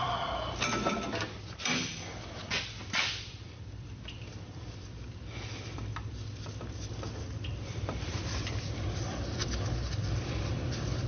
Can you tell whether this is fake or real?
fake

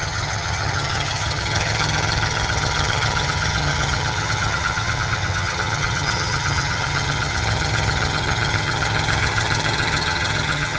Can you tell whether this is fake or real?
fake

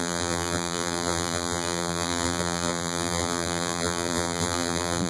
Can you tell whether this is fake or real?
fake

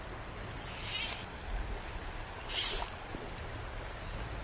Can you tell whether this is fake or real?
real